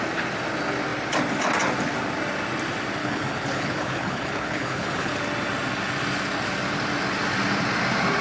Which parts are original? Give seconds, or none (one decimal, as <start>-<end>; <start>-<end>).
0.0-3.0; 5.2-8.2